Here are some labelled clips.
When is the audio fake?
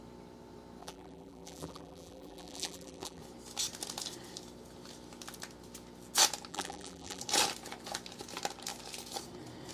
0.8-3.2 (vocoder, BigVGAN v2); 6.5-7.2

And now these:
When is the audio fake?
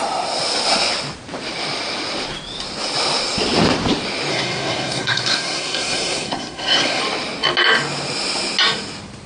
4.3-7.0 (codec, SNAC)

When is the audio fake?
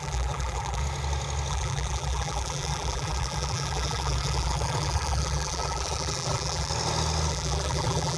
0.0-0.8 (vocoder, BigVGAN v2); 1.5-6.7; 7.3-8.2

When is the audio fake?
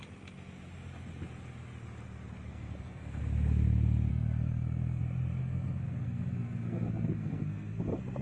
2.5-3.2 (codec, SNAC); 4.1-5.0; 5.4-8.2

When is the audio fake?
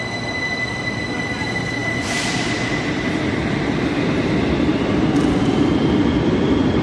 none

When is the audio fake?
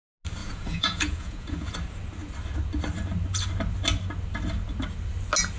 0.4-1.7 (vocoder, Vocos)